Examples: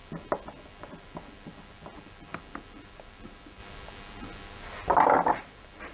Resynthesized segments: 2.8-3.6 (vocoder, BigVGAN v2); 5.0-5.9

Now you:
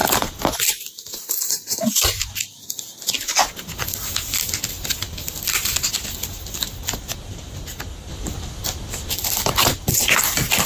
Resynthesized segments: 0.0-3.0 (vocoder, BigVGAN v2)

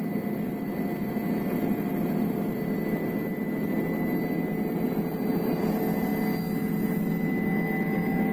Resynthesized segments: none

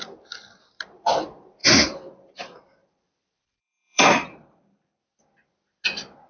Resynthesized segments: 1.6-2.3 (vocoder, BigVGAN v2); 2.8-5.0

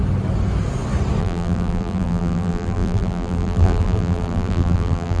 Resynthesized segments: 1.2-5.2 (vocoder, BigVGAN v2)